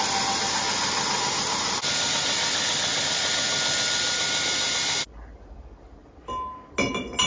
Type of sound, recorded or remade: recorded